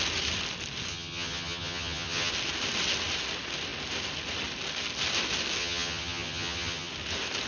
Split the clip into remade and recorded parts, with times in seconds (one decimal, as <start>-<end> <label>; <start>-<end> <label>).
0.0-0.9 recorded; 0.9-2.3 remade; 2.3-5.6 recorded; 5.6-6.9 remade; 6.9-7.5 recorded